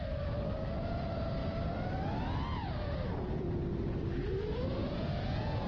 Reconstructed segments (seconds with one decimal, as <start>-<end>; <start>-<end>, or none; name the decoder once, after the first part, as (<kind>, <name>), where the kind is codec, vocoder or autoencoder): 4.8-5.7 (vocoder, Vocos)